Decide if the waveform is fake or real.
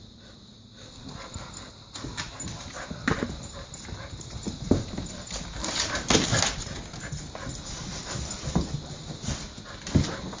real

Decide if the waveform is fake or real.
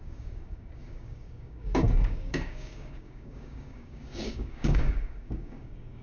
fake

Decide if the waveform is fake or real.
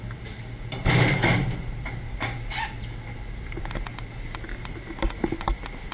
real